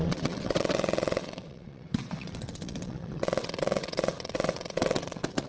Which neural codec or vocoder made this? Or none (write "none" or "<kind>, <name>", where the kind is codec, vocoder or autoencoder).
vocoder, WaveNeXt